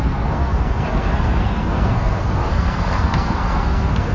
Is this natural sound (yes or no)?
no